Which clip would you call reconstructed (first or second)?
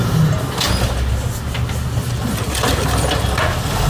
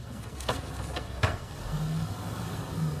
second